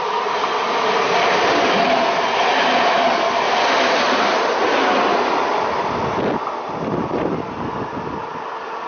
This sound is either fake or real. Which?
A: real